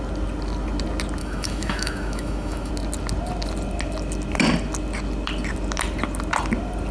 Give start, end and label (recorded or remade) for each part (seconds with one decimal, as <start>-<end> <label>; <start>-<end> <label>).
0.0-1.2 recorded; 1.2-2.7 remade; 2.7-6.9 recorded